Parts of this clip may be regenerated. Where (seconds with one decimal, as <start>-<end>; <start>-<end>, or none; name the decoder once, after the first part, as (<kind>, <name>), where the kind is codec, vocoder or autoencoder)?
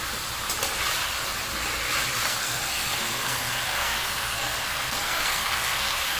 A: 2.2-6.2 (codec, SNAC)